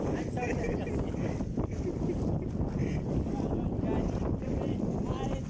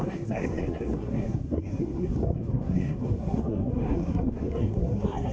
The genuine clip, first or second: first